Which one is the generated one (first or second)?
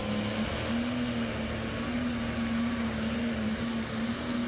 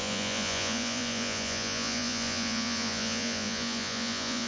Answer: second